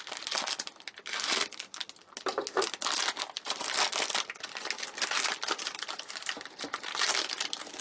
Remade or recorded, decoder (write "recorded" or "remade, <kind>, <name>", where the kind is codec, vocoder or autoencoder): recorded